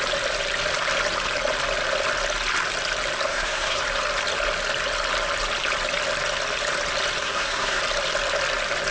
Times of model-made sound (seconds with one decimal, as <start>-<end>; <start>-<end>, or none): 3.3-3.8; 7.2-7.8